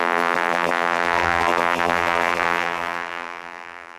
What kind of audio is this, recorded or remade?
remade